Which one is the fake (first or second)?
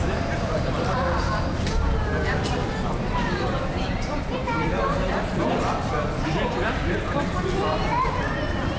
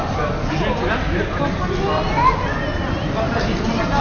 first